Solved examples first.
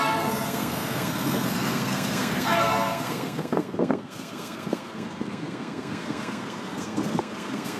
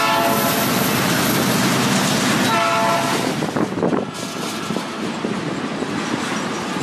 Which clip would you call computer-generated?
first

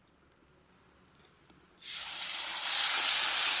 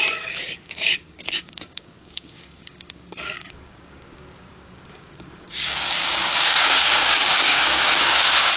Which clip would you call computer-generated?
second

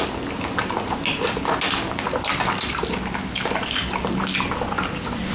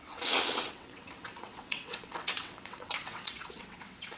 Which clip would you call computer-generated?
second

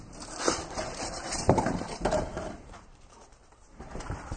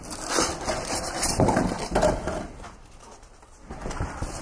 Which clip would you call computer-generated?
first